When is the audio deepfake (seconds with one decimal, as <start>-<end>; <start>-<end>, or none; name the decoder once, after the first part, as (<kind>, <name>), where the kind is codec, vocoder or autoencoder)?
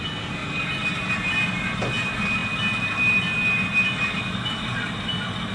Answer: none